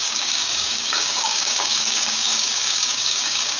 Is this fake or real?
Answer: fake